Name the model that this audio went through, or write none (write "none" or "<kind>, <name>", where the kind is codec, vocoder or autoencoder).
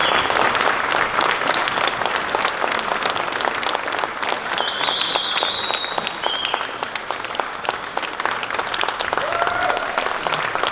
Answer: none